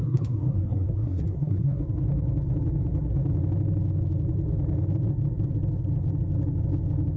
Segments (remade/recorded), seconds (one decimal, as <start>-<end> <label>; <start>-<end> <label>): 0.0-1.8 remade; 1.8-7.2 recorded